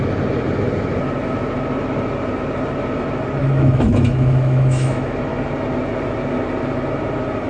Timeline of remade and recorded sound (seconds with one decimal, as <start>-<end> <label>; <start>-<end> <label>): 0.0-3.4 recorded; 3.4-5.2 remade; 5.2-7.5 recorded